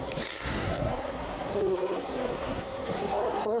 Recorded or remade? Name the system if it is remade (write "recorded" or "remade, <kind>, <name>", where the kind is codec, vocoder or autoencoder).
remade, codec, SNAC